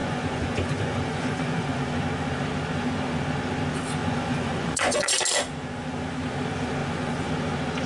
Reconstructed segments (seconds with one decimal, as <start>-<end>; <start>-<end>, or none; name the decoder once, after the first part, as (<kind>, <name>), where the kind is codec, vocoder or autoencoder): 0.0-1.8 (vocoder, Vocos); 4.0-5.1; 6.8-7.3